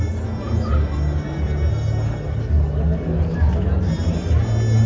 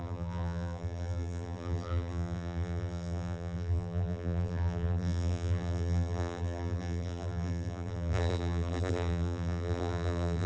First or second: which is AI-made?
second